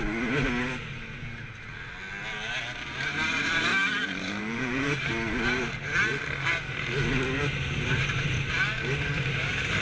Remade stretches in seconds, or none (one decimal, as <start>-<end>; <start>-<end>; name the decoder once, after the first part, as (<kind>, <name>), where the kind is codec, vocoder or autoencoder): 3.7-5.1 (vocoder, BigVGAN v2)